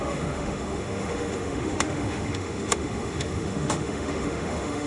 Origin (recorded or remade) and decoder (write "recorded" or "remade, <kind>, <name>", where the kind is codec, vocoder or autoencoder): remade, autoencoder, DAC-VAE